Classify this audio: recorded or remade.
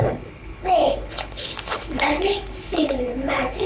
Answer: remade